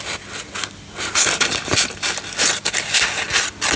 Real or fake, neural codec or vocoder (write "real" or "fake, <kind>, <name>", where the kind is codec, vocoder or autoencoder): real